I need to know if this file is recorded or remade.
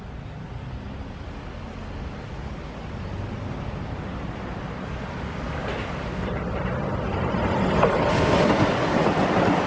recorded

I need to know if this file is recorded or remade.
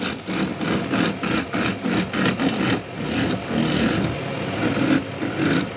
recorded